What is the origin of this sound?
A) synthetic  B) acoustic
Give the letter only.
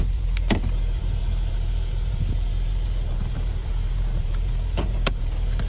A